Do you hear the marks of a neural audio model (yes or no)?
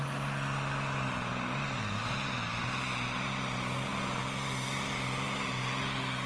no